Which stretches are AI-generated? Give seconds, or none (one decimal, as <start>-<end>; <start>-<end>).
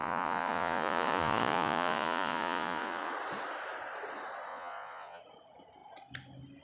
0.0-3.1; 4.5-5.2